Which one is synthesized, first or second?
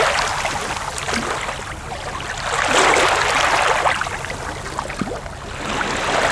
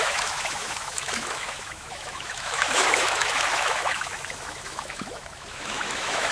second